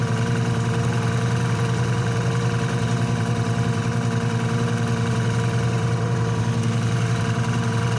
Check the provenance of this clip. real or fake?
fake